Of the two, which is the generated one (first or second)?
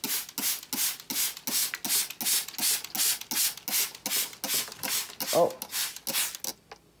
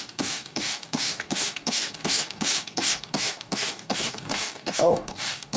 second